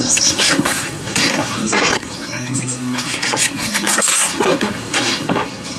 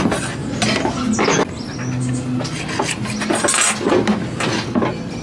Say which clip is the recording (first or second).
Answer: second